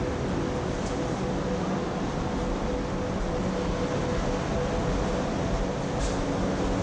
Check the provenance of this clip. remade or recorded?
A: recorded